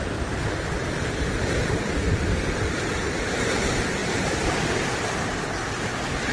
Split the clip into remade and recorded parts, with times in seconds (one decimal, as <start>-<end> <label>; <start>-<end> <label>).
0.0-2.1 recorded; 2.1-3.2 remade; 3.2-4.0 recorded; 4.0-4.5 remade; 4.5-6.3 recorded